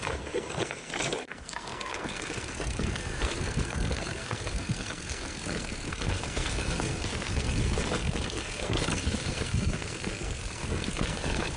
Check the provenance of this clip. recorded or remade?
remade